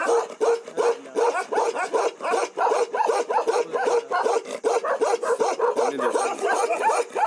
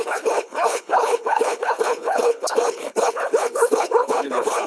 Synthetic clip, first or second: second